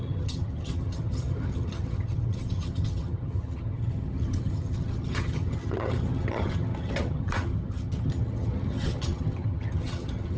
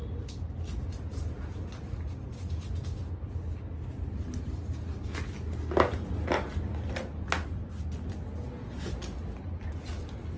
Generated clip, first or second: first